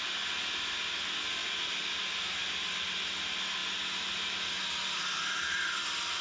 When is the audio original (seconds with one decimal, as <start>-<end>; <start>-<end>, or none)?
0.0-6.2

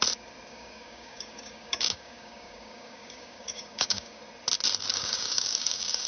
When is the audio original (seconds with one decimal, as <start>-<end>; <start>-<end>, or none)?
0.0-0.5; 4.2-4.9

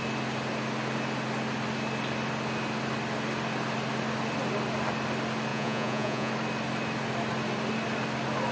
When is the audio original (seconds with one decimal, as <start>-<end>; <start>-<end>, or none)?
0.0-5.5; 6.3-8.5

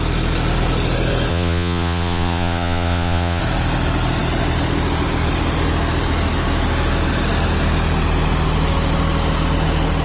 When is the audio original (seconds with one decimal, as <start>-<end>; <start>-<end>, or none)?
0.0-1.3; 3.4-10.0

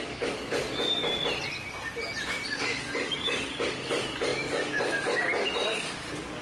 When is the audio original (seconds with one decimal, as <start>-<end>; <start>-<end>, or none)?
1.2-2.5

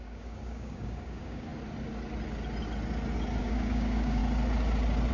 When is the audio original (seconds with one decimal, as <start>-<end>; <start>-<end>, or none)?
1.5-3.4; 4.2-5.1

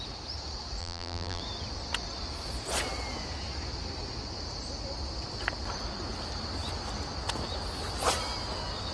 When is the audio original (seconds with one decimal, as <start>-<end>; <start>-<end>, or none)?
0.0-0.8; 1.4-8.9